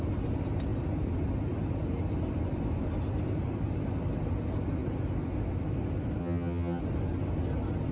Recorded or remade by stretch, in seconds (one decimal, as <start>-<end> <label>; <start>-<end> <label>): 0.0-6.2 recorded; 6.2-6.8 remade; 6.8-7.9 recorded